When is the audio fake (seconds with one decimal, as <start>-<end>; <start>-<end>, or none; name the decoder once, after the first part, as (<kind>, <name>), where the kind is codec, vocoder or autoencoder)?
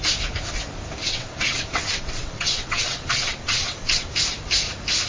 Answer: 1.0-4.1 (vocoder, WaveNeXt)